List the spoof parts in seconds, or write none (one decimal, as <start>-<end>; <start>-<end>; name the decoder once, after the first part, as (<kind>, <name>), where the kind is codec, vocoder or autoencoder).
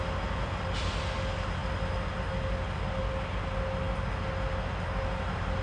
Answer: none